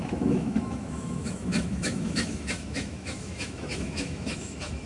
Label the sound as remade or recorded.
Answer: remade